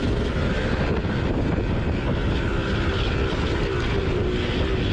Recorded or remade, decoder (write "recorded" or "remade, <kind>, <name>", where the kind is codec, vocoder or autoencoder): recorded